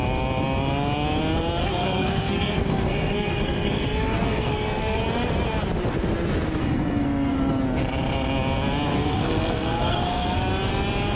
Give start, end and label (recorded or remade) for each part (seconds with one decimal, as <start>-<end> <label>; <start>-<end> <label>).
0.0-1.6 recorded; 1.6-5.0 remade; 5.0-6.6 recorded; 6.6-7.5 remade; 7.5-8.9 recorded; 8.9-10.4 remade; 10.4-11.2 recorded